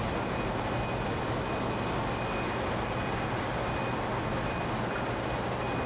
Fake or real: real